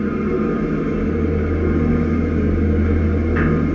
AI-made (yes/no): no